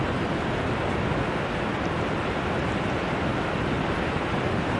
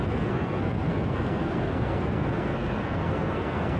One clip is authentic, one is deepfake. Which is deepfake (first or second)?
second